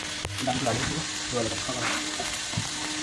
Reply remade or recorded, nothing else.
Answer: recorded